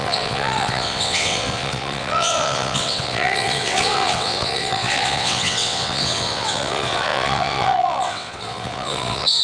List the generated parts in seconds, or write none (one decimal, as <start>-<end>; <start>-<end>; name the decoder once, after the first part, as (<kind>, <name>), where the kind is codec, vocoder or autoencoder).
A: 0.0-9.4 (vocoder, WaveNeXt)